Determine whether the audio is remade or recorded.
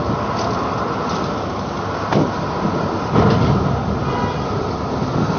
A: recorded